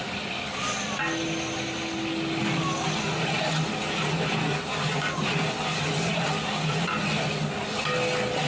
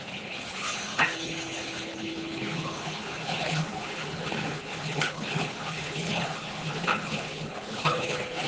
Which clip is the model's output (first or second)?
second